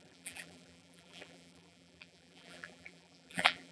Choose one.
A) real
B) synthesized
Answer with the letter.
B